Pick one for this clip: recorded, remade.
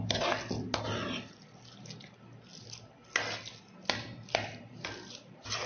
recorded